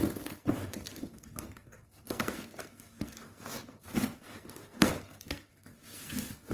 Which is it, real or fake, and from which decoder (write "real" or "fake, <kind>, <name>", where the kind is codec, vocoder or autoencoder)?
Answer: fake, codec, SNAC